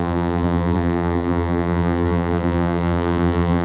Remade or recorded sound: remade